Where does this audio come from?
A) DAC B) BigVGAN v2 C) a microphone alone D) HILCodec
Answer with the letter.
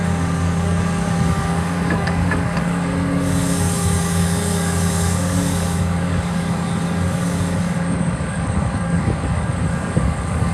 A